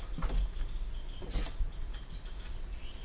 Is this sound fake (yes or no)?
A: no